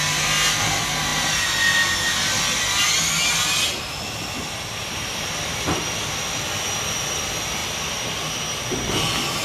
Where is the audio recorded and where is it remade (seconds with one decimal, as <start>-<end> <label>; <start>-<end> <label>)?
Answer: 0.0-3.7 recorded; 3.7-5.1 remade; 5.1-7.6 recorded; 7.6-8.4 remade; 8.4-9.4 recorded